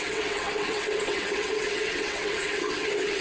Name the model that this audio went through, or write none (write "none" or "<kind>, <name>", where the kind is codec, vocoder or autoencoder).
vocoder, WaveNeXt